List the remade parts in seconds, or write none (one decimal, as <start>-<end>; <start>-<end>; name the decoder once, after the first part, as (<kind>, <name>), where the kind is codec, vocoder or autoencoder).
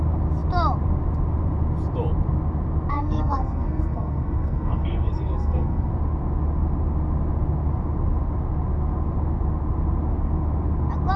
2.9-5.9 (codec, SNAC)